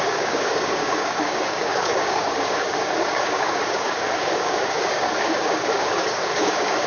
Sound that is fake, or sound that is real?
fake